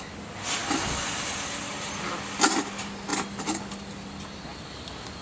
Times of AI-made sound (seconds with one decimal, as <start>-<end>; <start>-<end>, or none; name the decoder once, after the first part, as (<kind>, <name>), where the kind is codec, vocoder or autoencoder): none